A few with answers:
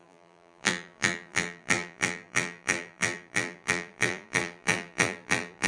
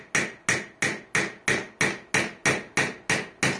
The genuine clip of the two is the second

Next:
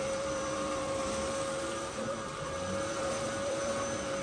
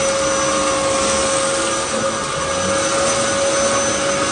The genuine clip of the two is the second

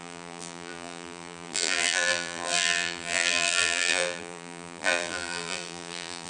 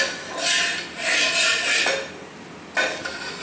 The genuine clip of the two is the second